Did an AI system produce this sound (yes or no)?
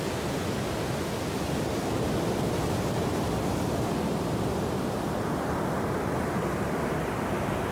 no